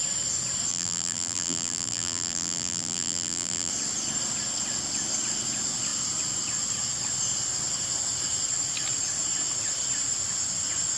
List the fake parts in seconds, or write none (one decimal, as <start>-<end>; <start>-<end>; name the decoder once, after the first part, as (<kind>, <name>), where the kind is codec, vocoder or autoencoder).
0.7-3.7 (vocoder, BigVGAN v2)